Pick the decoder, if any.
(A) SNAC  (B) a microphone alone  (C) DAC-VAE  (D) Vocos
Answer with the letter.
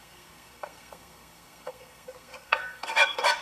A